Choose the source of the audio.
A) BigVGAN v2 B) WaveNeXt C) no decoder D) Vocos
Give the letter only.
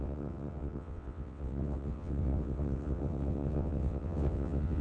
B